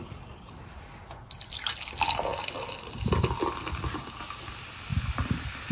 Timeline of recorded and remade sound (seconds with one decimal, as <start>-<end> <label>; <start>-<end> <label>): 0.0-5.7 recorded